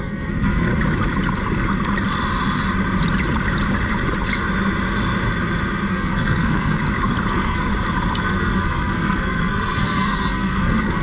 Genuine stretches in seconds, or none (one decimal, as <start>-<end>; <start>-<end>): 0.7-5.9; 6.8-7.3; 7.7-8.2